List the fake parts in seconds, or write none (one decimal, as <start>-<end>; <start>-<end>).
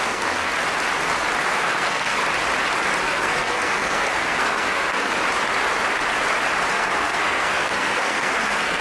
0.0-0.5; 1.4-2.2; 3.0-5.1; 6.7-8.8